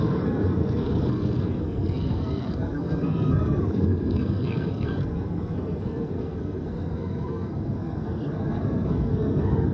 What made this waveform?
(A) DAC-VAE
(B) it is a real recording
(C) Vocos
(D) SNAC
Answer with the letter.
D